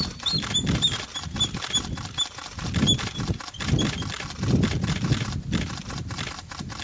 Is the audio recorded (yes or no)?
yes